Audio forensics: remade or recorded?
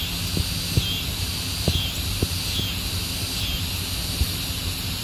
recorded